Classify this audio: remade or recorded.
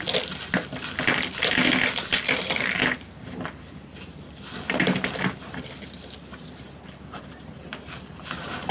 recorded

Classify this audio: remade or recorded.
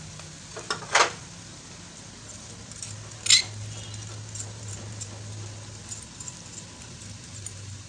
recorded